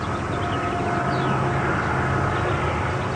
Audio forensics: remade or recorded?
recorded